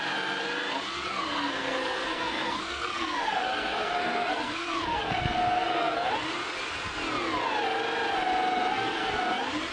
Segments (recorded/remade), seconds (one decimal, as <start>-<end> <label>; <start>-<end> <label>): 0.0-1.1 recorded; 1.1-6.1 remade; 6.1-8.7 recorded; 8.7-9.2 remade; 9.2-9.7 recorded